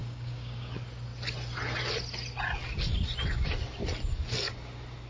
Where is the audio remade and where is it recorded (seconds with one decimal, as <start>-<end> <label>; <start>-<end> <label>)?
0.0-0.7 remade; 0.7-5.1 recorded